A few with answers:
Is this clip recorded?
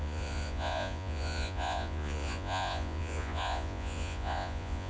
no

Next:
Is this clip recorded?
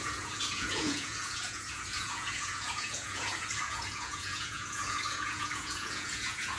no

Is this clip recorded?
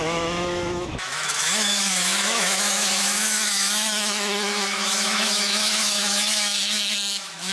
no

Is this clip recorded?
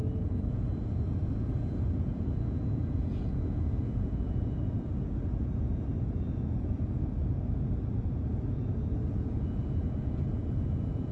no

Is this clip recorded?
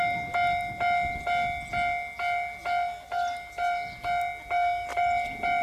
yes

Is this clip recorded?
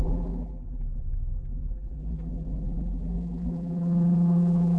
no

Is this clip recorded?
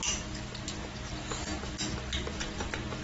yes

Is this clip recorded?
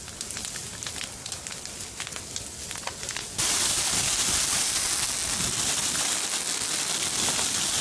yes